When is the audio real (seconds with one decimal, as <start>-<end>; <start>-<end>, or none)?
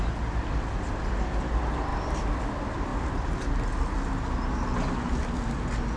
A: 0.0-6.0